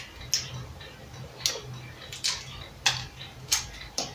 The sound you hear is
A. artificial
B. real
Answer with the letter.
B